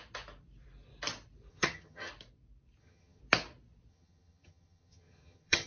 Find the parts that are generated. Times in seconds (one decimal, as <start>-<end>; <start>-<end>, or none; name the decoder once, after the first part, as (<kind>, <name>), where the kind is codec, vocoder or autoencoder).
1.5-2.1 (vocoder, HiFi-GAN); 2.8-3.2; 3.9-5.7